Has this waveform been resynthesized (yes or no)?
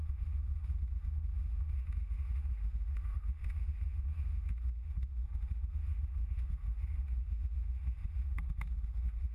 yes